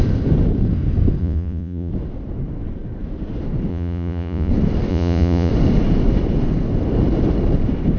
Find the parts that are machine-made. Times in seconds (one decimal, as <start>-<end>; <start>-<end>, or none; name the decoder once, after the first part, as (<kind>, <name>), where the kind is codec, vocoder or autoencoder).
1.2-1.9 (vocoder, Vocos); 3.7-4.5; 4.9-5.5